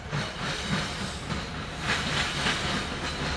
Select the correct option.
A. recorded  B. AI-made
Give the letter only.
A